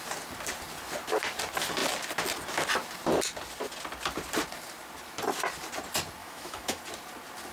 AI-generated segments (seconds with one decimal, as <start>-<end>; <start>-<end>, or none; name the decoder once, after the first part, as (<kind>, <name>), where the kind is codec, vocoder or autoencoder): 6.2-6.8 (autoencoder, DAC-VAE)

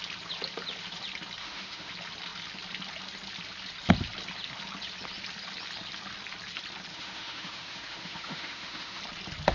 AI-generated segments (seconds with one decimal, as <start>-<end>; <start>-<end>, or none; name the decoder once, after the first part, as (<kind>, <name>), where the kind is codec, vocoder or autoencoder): 1.4-1.9 (autoencoder, DAC-VAE); 6.9-9.0

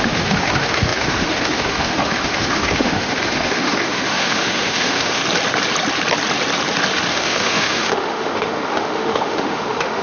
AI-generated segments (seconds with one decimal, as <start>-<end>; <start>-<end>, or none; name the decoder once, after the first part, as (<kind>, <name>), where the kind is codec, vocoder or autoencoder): 0.0-5.2 (autoencoder, DAC-VAE); 7.1-10.0

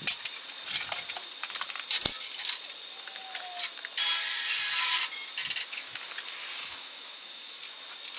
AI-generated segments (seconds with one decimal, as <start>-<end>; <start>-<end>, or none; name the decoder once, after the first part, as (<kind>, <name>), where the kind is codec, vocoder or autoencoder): 5.6-6.1 (autoencoder, DAC-VAE); 6.6-7.6

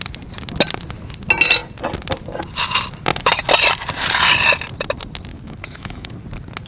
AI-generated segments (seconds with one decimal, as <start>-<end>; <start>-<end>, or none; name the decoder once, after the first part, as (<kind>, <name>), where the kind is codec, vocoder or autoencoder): 5.3-6.1 (autoencoder, DAC-VAE)